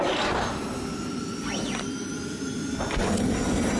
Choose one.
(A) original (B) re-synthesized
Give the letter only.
B